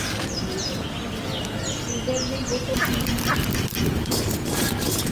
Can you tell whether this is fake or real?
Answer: real